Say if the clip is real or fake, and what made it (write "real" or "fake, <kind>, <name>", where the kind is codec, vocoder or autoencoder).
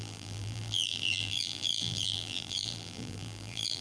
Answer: fake, vocoder, BigVGAN v2